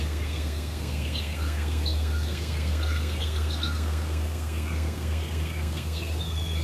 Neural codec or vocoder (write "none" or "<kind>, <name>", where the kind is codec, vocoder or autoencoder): codec, SNAC